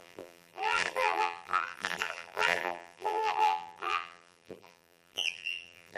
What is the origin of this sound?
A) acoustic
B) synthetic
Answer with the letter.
B